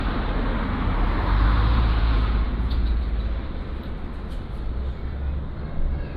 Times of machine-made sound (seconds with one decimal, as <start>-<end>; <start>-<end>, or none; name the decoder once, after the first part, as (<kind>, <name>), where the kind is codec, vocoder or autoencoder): 1.7-3.0 (vocoder, Vocos)